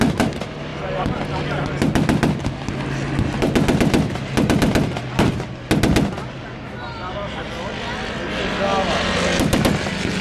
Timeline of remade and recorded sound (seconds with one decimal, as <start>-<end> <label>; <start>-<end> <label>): 0.0-10.2 recorded